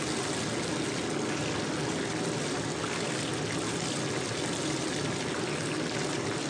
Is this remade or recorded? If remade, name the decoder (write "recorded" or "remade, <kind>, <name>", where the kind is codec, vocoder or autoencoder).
recorded